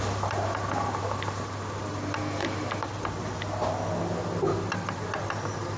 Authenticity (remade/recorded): remade